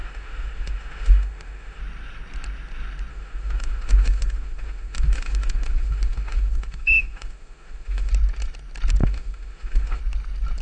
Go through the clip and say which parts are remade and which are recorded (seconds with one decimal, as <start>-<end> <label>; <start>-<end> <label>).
0.0-1.8 remade; 1.8-3.1 recorded; 3.1-8.1 remade; 8.1-9.0 recorded; 9.0-10.0 remade; 10.0-10.6 recorded